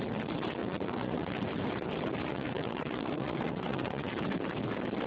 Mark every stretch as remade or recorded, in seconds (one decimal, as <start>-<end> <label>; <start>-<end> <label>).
0.0-0.6 recorded; 0.6-1.4 remade; 1.4-2.3 recorded; 2.3-4.1 remade; 4.1-5.1 recorded